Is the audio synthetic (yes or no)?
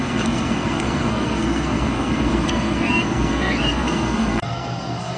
yes